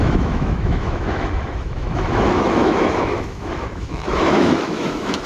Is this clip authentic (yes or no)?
no